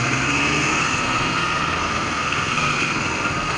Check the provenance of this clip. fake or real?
fake